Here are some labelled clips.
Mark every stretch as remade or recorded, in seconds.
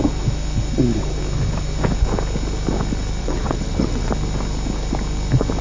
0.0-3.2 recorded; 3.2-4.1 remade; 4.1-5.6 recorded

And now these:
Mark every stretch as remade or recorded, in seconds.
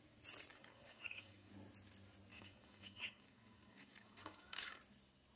0.0-0.5 recorded; 0.5-1.5 remade; 1.5-2.3 recorded; 2.3-4.8 remade; 4.8-5.4 recorded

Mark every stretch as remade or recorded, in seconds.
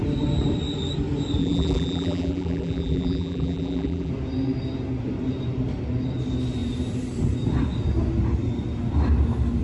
0.0-1.4 recorded; 1.4-4.1 remade; 4.1-9.6 recorded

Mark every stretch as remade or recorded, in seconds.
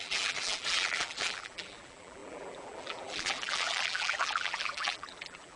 0.0-5.6 remade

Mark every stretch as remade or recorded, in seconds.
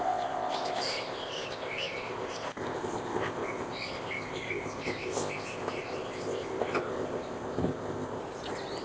0.0-8.2 remade; 8.2-8.8 recorded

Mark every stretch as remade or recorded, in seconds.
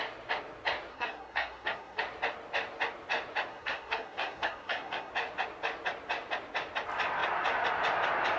0.0-0.9 recorded; 0.9-2.0 remade; 2.0-3.5 recorded; 3.5-5.1 remade; 5.1-8.4 recorded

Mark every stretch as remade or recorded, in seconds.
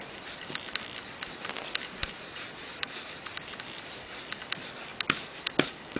0.0-2.0 recorded; 2.0-3.6 remade; 3.6-6.0 recorded